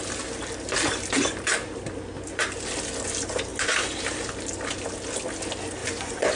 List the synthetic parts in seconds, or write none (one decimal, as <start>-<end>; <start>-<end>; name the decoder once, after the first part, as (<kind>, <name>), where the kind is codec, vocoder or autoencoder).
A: 5.8-6.4 (vocoder, Vocos)